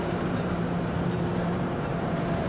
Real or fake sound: fake